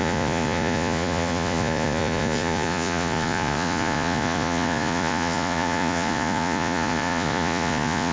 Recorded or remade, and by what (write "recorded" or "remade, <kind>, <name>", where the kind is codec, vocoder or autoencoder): remade, vocoder, Vocos